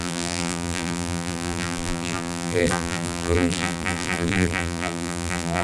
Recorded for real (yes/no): no